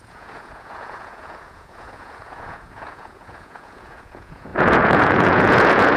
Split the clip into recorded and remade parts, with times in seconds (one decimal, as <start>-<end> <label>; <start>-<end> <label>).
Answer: 0.0-6.0 remade